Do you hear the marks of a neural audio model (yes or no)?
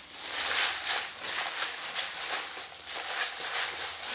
no